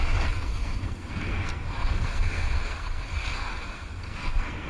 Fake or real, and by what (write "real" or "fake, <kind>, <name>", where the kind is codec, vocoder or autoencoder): fake, codec, SNAC